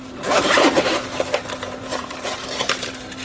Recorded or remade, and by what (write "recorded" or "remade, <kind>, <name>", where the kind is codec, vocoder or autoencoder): remade, vocoder, BigVGAN v2